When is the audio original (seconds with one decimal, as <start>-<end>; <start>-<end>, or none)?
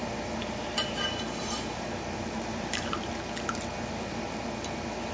3.1-5.1